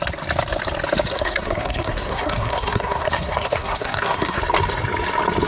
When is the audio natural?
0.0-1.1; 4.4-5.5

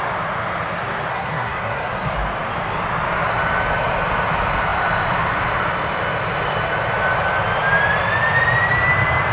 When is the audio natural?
0.0-1.1; 2.1-9.3

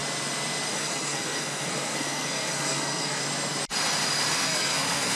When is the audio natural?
0.0-0.7; 3.2-4.3

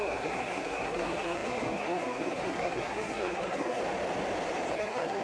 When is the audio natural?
3.8-4.7